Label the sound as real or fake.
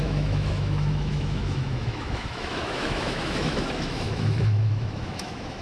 fake